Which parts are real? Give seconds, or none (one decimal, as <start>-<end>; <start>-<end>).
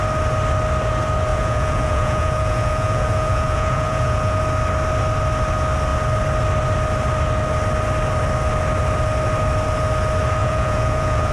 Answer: 0.0-1.3; 4.4-10.4